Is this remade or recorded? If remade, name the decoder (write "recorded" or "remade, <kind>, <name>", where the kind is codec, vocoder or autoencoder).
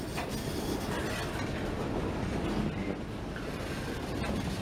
recorded